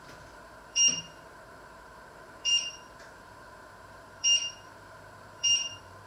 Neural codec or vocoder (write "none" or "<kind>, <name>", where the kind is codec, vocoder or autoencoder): vocoder, BigVGAN v2